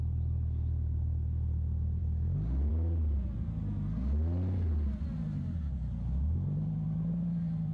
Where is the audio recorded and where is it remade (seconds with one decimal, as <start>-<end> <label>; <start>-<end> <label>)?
0.0-7.7 recorded